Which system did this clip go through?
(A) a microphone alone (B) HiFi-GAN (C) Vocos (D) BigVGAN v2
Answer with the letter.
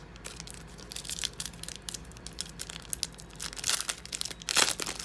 A